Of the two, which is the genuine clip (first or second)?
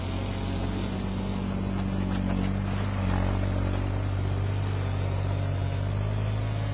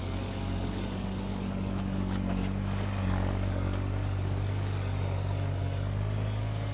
first